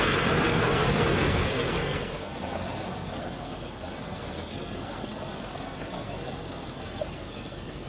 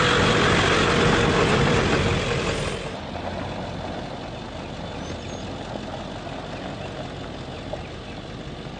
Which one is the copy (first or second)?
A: first